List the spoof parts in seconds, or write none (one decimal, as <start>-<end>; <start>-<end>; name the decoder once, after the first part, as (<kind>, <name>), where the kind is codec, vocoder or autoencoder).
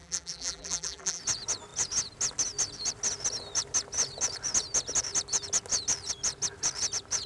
0.0-1.2 (vocoder, BigVGAN v2)